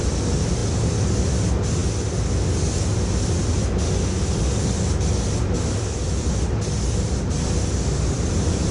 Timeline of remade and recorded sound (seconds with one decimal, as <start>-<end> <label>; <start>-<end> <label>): 0.0-0.6 remade; 0.6-1.2 recorded; 1.2-1.8 remade; 1.8-3.1 recorded; 3.1-3.6 remade; 3.6-5.8 recorded; 5.8-8.7 remade